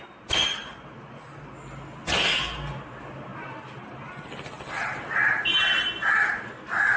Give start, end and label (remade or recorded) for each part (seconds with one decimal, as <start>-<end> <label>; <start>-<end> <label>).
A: 0.0-7.0 recorded